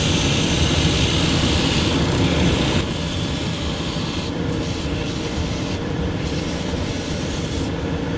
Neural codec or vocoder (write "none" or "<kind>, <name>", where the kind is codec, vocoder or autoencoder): vocoder, BigVGAN v2